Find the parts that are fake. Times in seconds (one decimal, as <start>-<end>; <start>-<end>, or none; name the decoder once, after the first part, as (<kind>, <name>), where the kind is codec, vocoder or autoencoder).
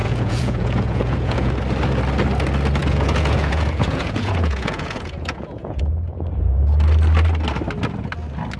0.0-1.5 (vocoder, Vocos); 2.8-5.8